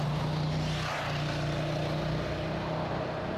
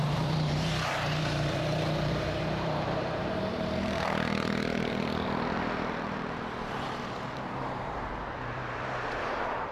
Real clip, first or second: first